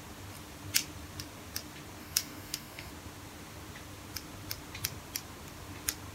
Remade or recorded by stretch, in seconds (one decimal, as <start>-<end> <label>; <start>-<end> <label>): 0.0-2.0 recorded; 2.0-2.9 remade; 2.9-6.1 recorded